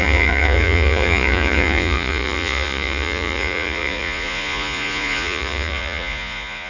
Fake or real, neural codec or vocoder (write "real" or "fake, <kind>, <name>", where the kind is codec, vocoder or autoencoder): fake, vocoder, Vocos